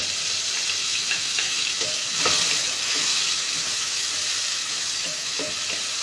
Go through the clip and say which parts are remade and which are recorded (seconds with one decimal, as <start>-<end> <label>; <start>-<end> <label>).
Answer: 0.0-0.8 recorded; 0.8-2.2 remade; 2.2-2.6 recorded; 2.6-4.1 remade; 4.1-4.5 recorded; 4.5-5.5 remade; 5.5-6.0 recorded